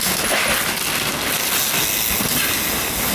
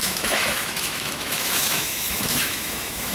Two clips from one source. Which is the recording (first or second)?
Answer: first